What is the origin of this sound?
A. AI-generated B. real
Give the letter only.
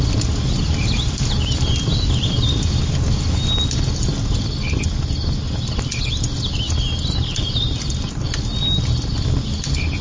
B